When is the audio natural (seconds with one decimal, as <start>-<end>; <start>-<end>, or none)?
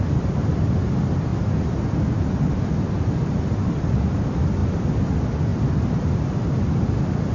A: 0.0-7.3